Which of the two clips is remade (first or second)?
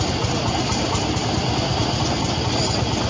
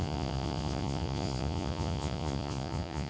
second